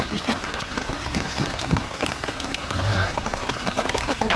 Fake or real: fake